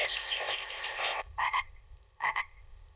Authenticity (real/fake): fake